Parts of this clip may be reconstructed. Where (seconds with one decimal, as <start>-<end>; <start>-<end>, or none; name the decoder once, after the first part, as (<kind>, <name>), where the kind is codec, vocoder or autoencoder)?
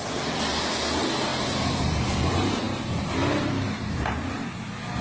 1.3-3.1 (vocoder, BigVGAN v2)